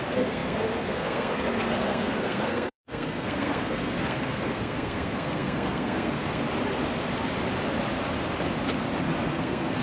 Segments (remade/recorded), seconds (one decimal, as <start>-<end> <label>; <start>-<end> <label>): 0.0-6.4 remade; 6.4-9.3 recorded; 9.3-9.8 remade